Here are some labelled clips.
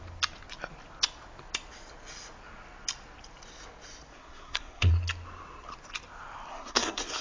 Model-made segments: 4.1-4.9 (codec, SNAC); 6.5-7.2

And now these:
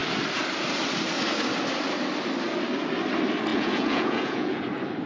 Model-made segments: 3.5-4.6 (vocoder, Vocos)